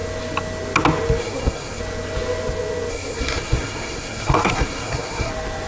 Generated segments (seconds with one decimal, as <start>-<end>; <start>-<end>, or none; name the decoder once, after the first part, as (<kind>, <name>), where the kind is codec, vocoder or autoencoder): 1.2-1.8 (codec, SNAC); 2.9-5.3